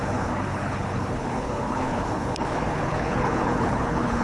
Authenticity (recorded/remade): remade